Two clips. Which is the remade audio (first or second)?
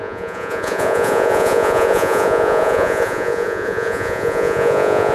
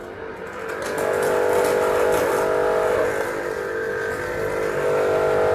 first